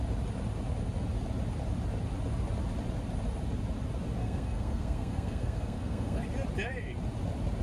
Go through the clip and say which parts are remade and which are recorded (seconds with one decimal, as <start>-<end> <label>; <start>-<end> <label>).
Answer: 0.0-4.2 recorded; 4.2-6.2 remade; 6.2-7.6 recorded